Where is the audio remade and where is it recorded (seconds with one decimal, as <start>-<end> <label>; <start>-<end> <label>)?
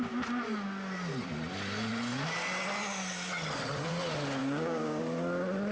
0.0-4.4 recorded; 4.4-5.0 remade; 5.0-5.7 recorded